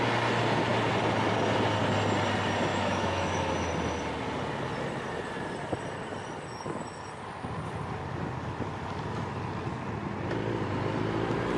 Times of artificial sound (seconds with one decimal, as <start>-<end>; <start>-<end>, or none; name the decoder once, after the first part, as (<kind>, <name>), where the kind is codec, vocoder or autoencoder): 2.7-3.5 (autoencoder, DAC-VAE)